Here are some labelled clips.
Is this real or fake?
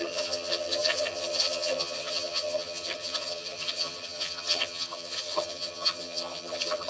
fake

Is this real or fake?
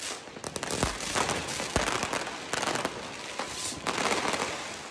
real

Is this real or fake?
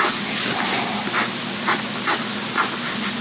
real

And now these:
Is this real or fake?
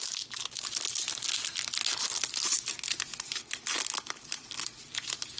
real